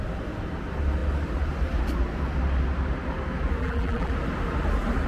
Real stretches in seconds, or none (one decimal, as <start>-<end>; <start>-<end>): 0.0-3.6; 4.1-5.1